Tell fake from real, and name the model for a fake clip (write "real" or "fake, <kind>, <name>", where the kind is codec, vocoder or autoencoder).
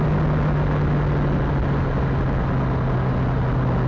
real